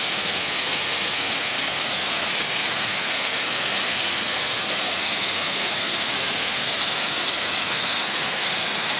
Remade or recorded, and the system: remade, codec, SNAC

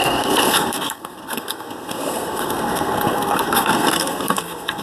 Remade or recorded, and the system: remade, codec, SNAC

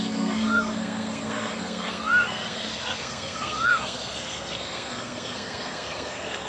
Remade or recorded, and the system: remade, codec, SNAC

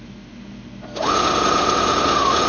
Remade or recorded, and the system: recorded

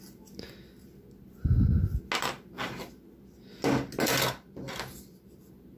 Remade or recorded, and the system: recorded